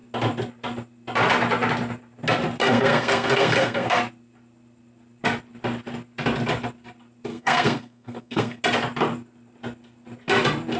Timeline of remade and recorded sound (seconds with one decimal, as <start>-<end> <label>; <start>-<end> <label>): 0.0-2.6 recorded; 2.6-4.0 remade; 4.0-7.3 recorded; 7.3-8.6 remade; 8.6-10.8 recorded